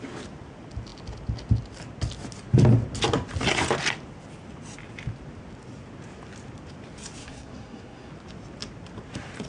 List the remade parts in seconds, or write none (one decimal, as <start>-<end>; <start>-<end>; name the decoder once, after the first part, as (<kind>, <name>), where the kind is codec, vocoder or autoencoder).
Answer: 7.2-8.1 (codec, SNAC)